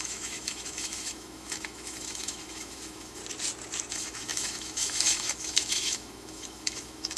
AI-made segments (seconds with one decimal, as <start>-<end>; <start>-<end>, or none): 0.0-3.2; 3.9-7.2

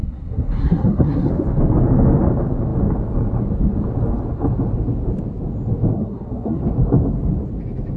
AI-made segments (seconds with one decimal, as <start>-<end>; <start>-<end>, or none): 0.0-1.3; 5.9-6.6

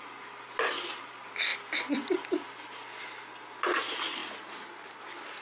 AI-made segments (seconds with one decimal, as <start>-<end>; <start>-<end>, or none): none

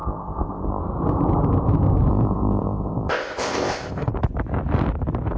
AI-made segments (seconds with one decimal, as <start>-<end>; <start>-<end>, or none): 0.0-0.8; 2.1-4.1